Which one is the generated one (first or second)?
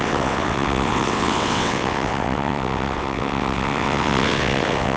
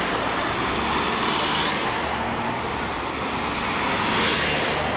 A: first